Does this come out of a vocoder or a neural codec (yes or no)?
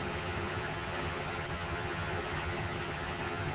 yes